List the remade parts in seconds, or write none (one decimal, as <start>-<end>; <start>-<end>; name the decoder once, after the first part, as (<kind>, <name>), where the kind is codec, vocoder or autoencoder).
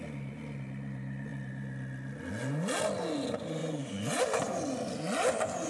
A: 3.6-4.2 (vocoder, Vocos)